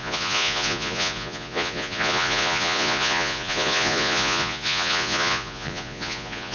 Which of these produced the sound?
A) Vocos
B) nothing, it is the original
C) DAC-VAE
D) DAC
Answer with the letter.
A